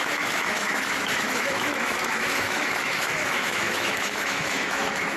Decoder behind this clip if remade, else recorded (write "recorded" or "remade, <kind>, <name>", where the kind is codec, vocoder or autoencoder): remade, autoencoder, DAC-VAE